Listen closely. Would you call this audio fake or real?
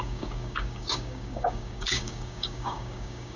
fake